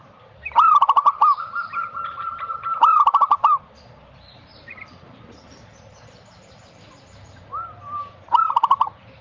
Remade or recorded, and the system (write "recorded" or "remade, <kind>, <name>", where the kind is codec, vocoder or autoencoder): remade, vocoder, BigVGAN v2